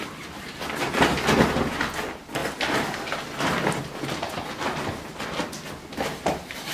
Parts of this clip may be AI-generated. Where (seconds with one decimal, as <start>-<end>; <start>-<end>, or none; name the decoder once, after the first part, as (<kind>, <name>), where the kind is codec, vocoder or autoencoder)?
none